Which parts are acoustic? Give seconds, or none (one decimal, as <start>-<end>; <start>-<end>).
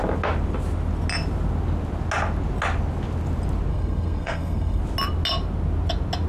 0.0-3.7; 4.8-6.3